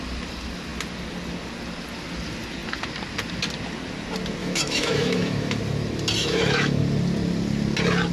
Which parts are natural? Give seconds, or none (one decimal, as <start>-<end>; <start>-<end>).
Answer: 0.0-4.4; 5.6-6.2; 6.8-8.1